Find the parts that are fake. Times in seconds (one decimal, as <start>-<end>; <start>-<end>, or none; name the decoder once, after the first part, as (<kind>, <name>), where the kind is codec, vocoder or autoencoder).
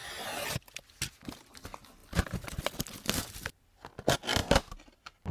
none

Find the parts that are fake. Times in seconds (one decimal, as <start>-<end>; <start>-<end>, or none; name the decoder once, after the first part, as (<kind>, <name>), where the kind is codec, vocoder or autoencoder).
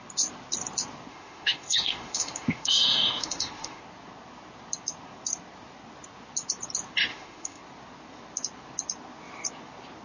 1.1-3.8 (autoencoder, DAC-VAE); 7.1-7.6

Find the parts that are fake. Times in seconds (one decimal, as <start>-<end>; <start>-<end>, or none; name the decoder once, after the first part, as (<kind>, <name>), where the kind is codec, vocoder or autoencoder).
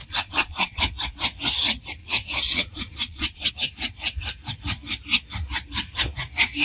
0.0-0.8 (vocoder, Vocos); 2.0-3.5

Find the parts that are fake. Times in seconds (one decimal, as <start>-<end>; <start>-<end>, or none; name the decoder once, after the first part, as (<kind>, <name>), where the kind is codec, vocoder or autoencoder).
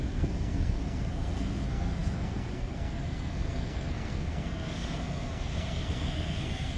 0.0-6.8 (codec, SNAC)